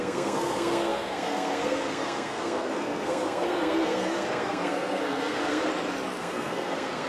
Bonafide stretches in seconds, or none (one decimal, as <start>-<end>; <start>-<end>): 5.7-6.2